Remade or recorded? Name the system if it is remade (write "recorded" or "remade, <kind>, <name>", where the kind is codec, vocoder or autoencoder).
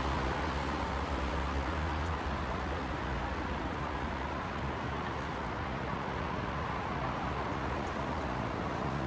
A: remade, vocoder, Vocos